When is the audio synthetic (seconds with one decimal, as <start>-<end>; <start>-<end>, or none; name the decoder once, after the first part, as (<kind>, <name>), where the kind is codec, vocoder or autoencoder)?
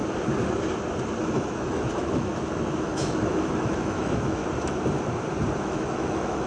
1.2-4.4 (autoencoder, DAC-VAE); 5.6-6.5